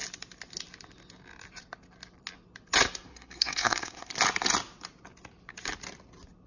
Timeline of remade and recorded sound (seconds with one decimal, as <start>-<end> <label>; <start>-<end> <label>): 0.0-3.1 recorded; 3.1-4.1 remade; 4.1-6.5 recorded